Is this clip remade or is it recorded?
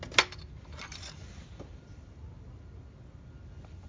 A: recorded